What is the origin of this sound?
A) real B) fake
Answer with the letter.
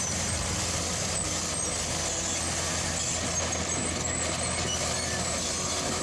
A